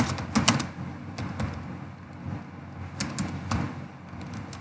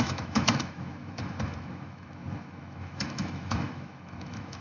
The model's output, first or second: second